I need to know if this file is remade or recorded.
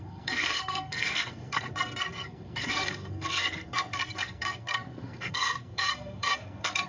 remade